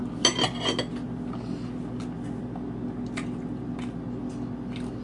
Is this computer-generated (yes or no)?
no